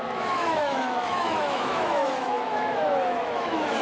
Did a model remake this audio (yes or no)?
yes